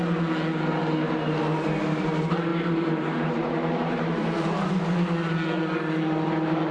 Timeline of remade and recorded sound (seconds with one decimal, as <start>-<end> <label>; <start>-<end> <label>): 0.0-2.5 recorded; 2.5-4.7 remade; 4.7-6.7 recorded